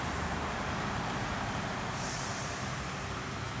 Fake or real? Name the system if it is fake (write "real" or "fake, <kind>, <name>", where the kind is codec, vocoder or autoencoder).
fake, vocoder, BigVGAN v2